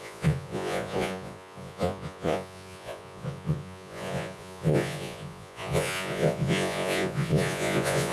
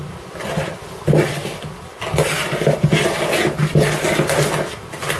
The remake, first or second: first